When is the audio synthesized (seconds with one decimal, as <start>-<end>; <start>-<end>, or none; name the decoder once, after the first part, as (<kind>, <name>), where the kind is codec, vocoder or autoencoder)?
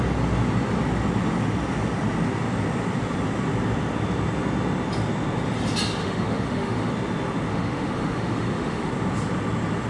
6.0-6.9 (autoencoder, DAC-VAE); 7.5-8.9